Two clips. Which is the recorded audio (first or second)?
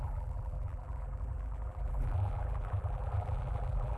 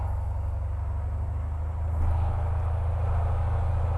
second